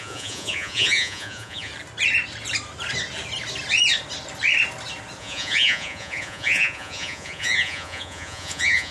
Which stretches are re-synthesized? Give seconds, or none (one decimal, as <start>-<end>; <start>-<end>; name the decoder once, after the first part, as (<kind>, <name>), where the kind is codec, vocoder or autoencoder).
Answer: 0.0-1.7 (vocoder, Vocos); 5.2-8.9